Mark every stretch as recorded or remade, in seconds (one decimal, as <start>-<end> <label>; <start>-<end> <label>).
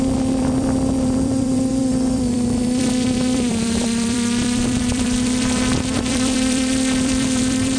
0.0-7.8 remade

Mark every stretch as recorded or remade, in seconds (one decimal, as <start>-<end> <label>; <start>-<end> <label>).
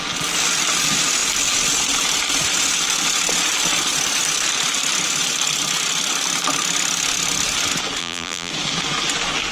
0.0-8.0 recorded; 8.0-8.5 remade; 8.5-9.5 recorded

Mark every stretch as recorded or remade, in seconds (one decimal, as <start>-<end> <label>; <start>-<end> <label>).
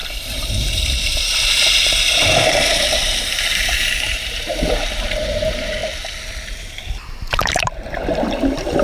0.0-5.8 remade; 5.8-6.5 recorded; 6.5-8.8 remade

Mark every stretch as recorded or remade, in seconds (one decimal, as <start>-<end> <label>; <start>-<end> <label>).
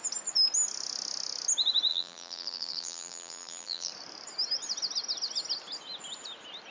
0.0-1.9 recorded; 1.9-3.9 remade; 3.9-6.7 recorded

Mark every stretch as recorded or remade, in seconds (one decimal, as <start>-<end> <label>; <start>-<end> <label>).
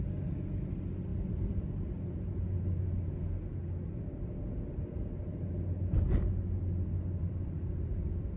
0.0-1.1 recorded; 1.1-2.5 remade; 2.5-7.2 recorded; 7.2-7.8 remade; 7.8-8.4 recorded